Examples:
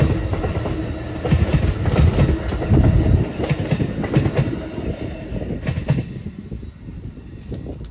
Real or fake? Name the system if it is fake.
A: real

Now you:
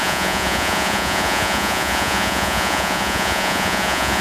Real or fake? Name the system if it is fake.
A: fake, vocoder, Vocos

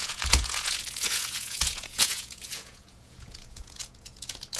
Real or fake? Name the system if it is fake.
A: fake, vocoder, Vocos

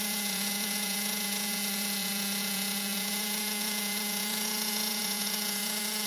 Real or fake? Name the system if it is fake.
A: fake, vocoder, Vocos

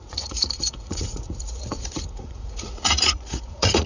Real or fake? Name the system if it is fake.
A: fake, vocoder, Vocos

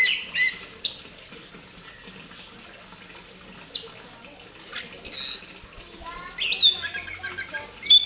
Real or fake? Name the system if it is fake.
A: real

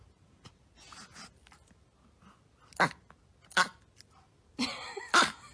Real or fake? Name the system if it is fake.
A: real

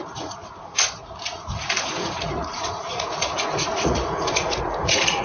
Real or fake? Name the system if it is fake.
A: fake, vocoder, Vocos